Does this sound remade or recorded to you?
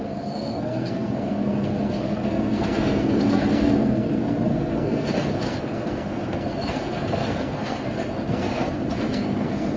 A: remade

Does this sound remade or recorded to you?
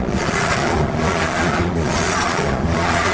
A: remade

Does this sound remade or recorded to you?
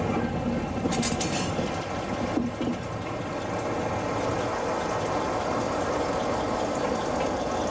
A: recorded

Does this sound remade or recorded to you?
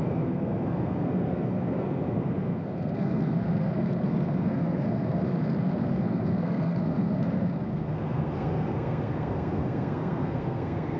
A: remade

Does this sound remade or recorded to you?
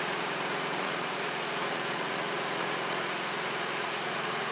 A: remade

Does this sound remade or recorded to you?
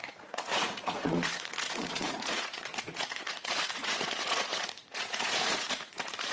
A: remade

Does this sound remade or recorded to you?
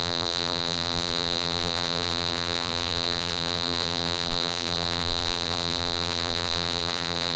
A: remade